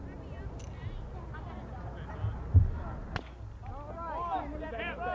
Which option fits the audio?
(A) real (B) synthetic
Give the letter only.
A